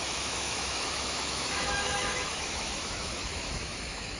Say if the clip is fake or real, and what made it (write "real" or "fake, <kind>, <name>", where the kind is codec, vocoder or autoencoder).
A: fake, autoencoder, DAC-VAE